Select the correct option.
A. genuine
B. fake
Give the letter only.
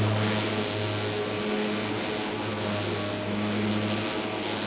A